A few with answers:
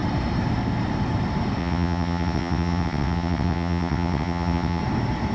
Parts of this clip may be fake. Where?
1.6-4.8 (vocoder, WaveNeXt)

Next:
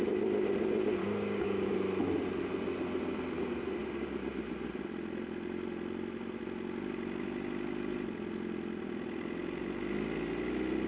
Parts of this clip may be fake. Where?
1.0-1.7 (codec, DAC)

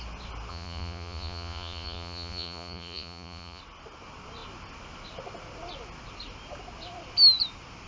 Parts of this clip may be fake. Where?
0.5-3.6 (vocoder, Vocos)

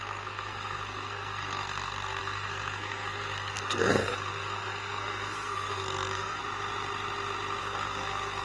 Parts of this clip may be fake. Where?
0.0-6.4 (codec, SNAC); 7.6-8.4

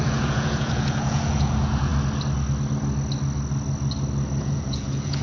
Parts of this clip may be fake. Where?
0.0-1.9 (vocoder, Vocos); 4.4-5.2

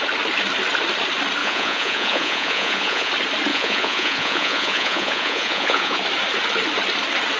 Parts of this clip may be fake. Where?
1.4-3.1 (vocoder, Vocos); 3.5-6.0

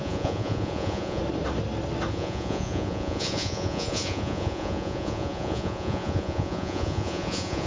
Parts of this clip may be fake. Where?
0.0-1.2 (vocoder, Vocos); 2.1-7.7